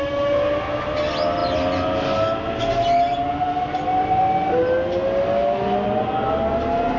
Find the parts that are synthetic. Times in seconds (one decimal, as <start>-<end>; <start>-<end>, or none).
none